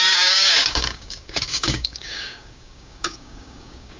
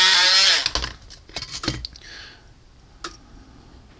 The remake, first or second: first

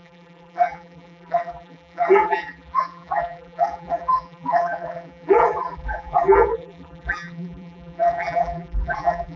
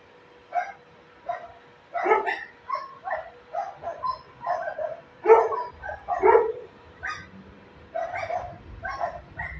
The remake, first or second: first